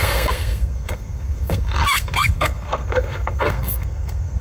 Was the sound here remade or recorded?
remade